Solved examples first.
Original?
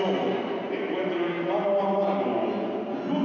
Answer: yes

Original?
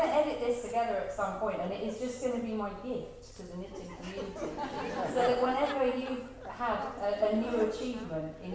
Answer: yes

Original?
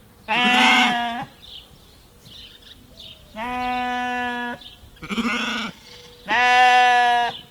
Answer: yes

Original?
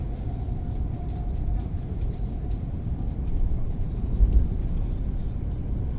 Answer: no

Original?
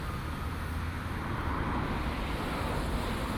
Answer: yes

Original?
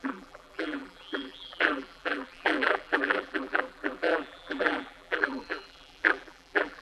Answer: no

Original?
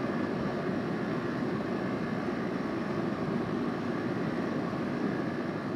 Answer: yes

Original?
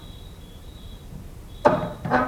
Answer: no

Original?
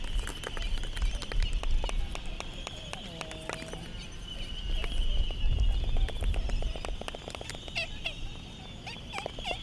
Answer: yes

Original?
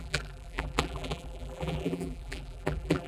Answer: no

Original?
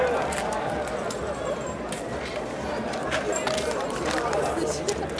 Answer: yes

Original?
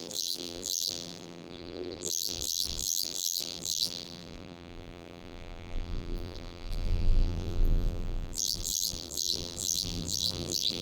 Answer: no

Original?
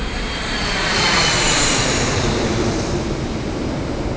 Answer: no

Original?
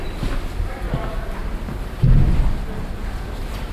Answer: yes